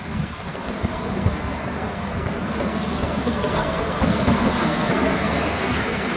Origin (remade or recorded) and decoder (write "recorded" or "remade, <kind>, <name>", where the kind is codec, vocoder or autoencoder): remade, codec, SNAC